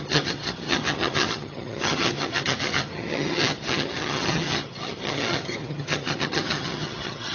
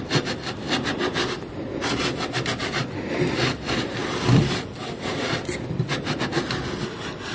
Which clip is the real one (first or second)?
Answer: second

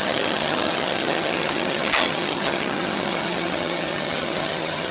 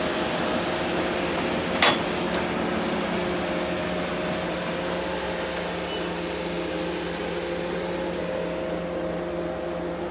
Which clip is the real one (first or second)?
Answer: second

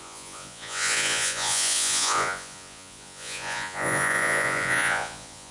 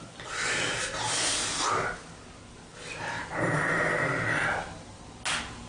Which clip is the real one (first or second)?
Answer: second